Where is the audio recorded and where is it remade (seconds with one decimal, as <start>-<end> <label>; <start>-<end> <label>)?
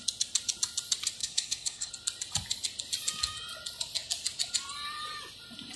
0.0-1.2 recorded; 1.2-1.9 remade; 1.9-5.8 recorded